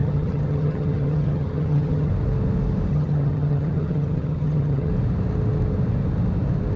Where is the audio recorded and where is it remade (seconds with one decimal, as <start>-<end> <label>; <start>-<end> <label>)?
0.0-2.1 remade; 2.1-2.9 recorded; 2.9-4.9 remade; 4.9-6.8 recorded